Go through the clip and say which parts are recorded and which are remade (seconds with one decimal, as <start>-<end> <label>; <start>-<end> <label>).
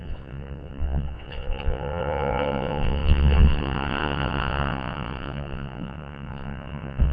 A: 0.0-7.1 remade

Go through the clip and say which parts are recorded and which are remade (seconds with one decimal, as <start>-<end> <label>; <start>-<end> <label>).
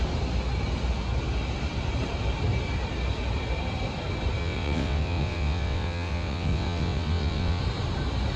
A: 0.0-4.4 recorded; 4.4-7.6 remade; 7.6-8.4 recorded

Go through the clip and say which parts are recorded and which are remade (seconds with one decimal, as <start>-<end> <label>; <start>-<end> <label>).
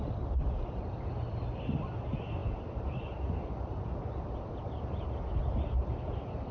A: 0.0-6.5 recorded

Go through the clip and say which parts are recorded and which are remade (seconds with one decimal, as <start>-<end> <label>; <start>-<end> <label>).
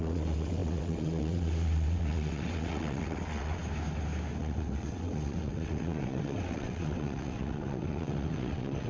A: 0.0-3.6 remade; 3.6-4.4 recorded; 4.4-8.9 remade